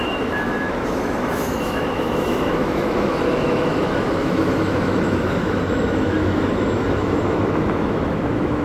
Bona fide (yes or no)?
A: no